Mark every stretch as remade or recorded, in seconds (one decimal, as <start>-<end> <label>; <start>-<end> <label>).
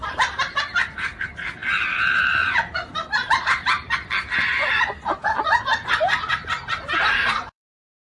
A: 0.0-5.2 remade; 5.2-6.9 recorded; 6.9-8.0 remade